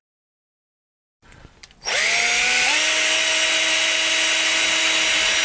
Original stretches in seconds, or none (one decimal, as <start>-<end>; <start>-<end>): 0.0-5.4